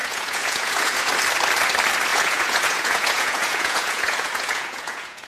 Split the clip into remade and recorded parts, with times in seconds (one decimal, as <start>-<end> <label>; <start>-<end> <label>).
0.0-1.1 remade; 1.1-2.1 recorded; 2.1-5.3 remade